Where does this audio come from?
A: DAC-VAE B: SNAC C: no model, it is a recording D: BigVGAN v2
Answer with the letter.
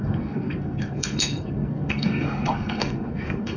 B